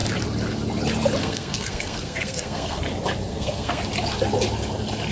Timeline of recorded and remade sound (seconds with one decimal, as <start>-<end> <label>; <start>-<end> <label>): 0.0-1.2 recorded; 1.2-2.8 remade; 2.8-3.3 recorded; 3.3-3.8 remade; 3.8-5.1 recorded